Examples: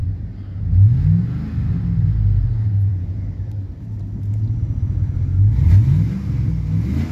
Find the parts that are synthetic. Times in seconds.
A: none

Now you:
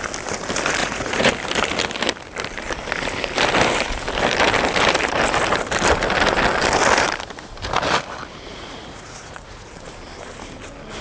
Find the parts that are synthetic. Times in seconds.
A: 0.8-1.3 (vocoder, Vocos); 8.5-9.7